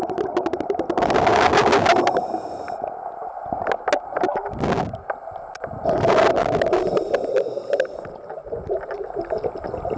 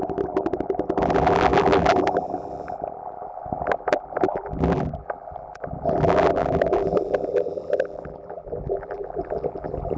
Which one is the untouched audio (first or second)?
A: first